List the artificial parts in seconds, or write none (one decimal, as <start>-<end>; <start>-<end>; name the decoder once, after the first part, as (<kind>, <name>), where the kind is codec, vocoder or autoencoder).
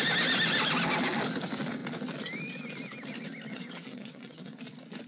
3.5-4.6 (vocoder, WaveNeXt)